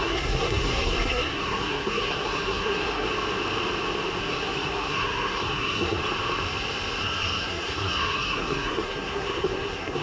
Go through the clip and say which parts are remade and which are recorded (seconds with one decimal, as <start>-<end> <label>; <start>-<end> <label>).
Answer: 0.0-3.1 remade; 3.1-4.2 recorded; 4.2-6.0 remade; 6.0-7.0 recorded; 7.0-10.0 remade